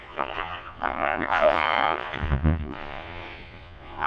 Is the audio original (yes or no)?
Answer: no